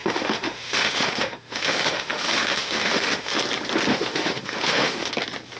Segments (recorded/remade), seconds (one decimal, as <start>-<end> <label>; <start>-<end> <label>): 0.0-3.4 remade; 3.4-3.9 recorded; 3.9-5.1 remade; 5.1-5.6 recorded